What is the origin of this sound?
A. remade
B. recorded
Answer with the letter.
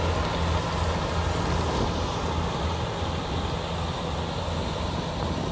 B